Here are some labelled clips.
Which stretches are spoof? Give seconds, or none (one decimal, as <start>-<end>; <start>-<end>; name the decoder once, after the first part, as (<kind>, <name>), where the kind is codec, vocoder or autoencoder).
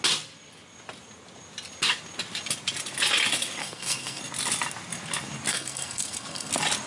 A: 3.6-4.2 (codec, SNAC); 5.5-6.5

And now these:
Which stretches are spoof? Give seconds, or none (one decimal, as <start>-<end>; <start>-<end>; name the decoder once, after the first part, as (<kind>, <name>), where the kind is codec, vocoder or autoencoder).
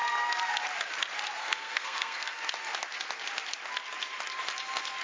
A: 1.4-2.4 (codec, SNAC)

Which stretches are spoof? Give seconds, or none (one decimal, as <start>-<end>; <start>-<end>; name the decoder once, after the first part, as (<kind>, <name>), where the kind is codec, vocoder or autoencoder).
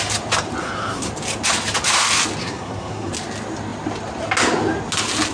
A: 0.6-1.1 (codec, SNAC); 2.4-3.1